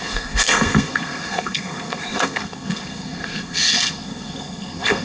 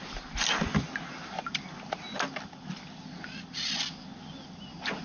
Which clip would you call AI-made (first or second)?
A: first